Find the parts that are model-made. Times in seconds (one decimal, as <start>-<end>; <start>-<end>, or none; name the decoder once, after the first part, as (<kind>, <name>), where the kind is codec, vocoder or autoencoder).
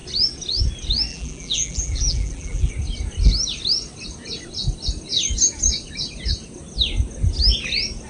1.1-2.7 (vocoder, BigVGAN v2)